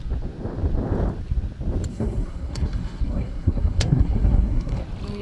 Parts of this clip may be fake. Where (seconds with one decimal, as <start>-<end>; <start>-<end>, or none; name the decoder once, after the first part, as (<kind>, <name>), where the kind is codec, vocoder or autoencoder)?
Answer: 1.9-4.8 (codec, SNAC)